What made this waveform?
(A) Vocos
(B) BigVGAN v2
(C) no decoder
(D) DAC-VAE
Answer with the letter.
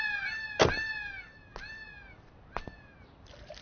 C